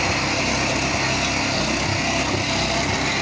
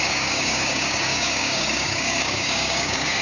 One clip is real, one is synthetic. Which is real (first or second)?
first